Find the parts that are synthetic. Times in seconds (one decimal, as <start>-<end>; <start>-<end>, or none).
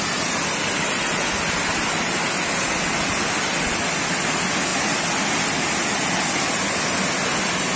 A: none